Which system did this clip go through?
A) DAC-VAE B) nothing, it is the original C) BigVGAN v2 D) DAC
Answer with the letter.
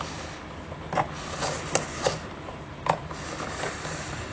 B